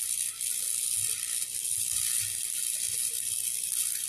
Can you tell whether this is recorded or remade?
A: recorded